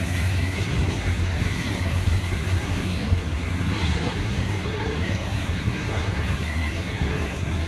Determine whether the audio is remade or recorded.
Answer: remade